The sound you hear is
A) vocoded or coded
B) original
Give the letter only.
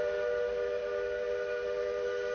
B